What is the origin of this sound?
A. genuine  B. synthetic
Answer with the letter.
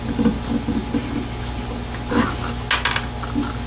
A